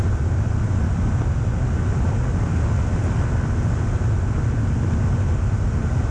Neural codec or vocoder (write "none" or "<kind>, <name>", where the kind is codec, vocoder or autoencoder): none